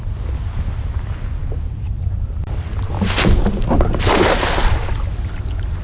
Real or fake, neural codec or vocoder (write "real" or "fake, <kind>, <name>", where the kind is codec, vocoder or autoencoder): real